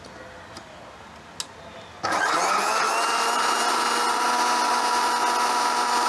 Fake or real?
real